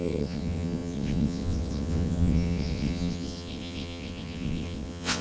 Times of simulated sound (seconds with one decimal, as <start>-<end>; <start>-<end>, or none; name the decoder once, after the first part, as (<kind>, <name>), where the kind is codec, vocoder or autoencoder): 0.0-5.2 (vocoder, WaveNeXt)